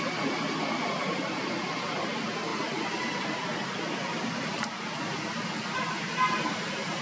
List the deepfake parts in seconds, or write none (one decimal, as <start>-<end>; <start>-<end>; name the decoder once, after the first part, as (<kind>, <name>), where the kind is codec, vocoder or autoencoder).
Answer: none